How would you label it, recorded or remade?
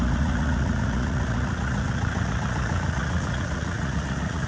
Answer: remade